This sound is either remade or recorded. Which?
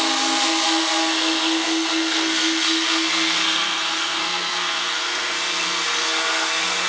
remade